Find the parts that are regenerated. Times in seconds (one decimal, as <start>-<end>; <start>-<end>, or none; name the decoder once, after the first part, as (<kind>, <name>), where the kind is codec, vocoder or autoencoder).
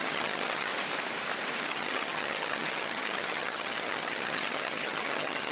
0.0-0.7 (vocoder, HiFi-GAN); 1.6-5.5